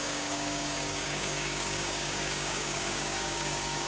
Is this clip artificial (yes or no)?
yes